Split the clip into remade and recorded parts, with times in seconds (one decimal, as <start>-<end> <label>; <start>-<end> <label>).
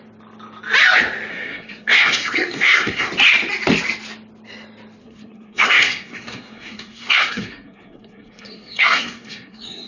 0.0-1.3 recorded; 1.3-3.1 remade; 3.1-5.0 recorded; 5.0-9.9 remade